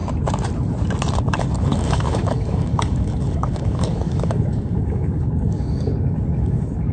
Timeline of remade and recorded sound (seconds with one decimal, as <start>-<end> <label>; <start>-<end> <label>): 0.0-1.4 recorded; 1.4-6.9 remade